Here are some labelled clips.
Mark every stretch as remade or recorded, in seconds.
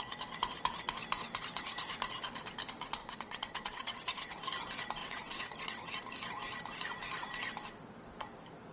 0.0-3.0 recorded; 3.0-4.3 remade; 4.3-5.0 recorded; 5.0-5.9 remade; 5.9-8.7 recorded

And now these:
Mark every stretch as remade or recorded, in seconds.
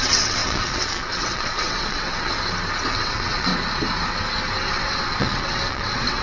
0.0-2.3 remade; 2.3-2.9 recorded; 2.9-3.5 remade; 3.5-4.7 recorded; 4.7-6.2 remade